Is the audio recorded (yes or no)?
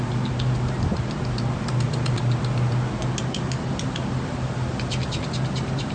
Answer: yes